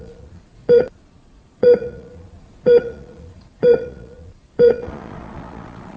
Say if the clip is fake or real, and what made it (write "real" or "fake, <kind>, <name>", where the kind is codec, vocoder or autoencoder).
fake, vocoder, Vocos